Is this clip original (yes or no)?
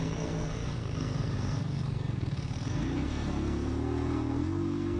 no